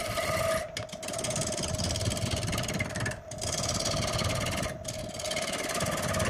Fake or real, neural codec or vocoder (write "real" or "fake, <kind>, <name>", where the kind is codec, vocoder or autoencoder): real